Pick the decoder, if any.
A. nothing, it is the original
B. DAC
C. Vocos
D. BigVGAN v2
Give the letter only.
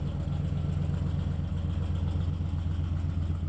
A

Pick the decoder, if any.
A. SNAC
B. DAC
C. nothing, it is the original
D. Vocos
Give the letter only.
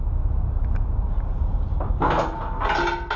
C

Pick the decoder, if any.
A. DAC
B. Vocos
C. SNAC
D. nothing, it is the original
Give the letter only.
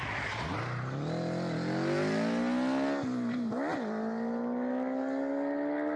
D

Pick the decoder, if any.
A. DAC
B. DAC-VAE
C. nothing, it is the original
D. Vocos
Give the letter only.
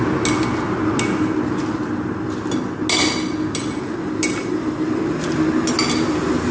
C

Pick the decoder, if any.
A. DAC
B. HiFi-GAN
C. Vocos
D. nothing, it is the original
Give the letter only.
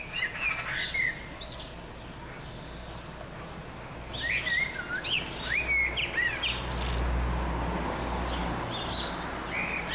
D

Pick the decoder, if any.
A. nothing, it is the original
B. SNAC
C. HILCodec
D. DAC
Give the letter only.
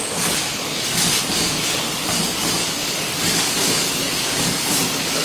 D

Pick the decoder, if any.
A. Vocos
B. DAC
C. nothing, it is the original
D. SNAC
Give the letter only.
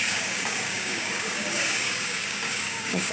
B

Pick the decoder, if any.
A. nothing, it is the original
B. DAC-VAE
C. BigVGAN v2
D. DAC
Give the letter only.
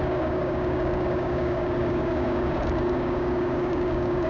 D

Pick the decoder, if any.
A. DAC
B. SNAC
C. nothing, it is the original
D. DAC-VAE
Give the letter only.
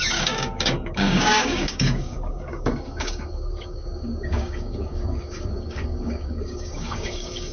A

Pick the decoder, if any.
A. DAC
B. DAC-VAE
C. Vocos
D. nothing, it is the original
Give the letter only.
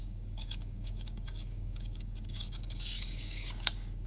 A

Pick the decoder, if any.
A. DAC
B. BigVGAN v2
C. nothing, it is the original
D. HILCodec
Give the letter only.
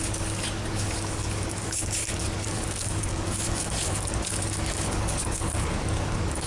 A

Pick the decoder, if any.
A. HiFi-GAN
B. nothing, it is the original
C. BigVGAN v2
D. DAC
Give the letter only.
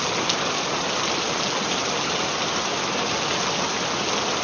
B